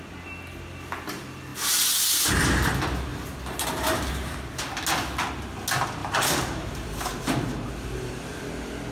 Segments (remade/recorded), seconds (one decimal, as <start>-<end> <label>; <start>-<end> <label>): 0.0-3.1 recorded; 3.1-4.1 remade; 4.1-6.0 recorded; 6.0-8.1 remade; 8.1-8.9 recorded